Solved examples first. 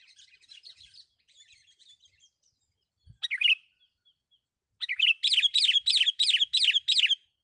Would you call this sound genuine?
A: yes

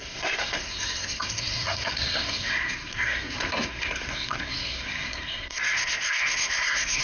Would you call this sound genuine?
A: no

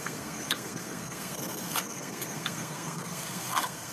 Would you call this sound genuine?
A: no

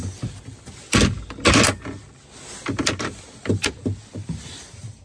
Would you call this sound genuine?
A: yes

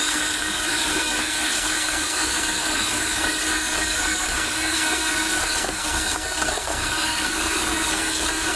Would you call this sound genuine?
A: no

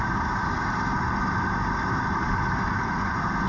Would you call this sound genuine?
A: yes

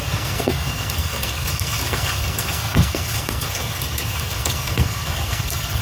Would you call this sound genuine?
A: no